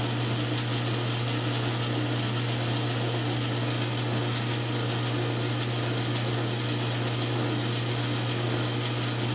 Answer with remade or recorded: recorded